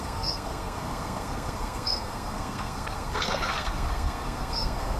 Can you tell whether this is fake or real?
fake